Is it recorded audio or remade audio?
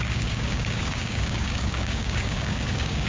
remade